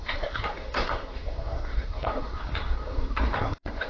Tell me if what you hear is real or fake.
fake